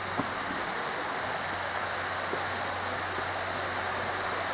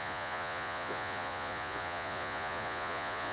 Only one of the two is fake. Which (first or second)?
second